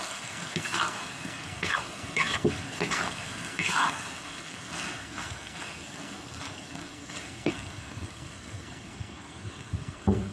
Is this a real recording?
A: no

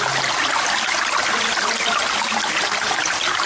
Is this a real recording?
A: yes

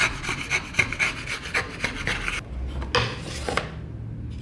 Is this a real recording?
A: yes